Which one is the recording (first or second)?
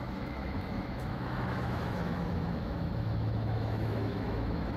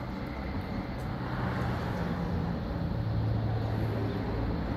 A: second